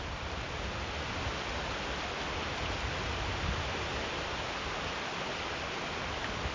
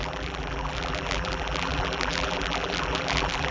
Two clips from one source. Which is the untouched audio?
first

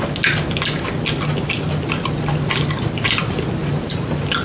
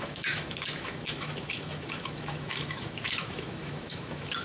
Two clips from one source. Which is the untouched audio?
first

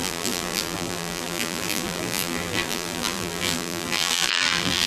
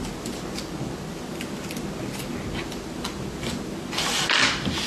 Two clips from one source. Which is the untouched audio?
second